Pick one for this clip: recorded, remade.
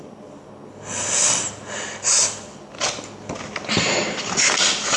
recorded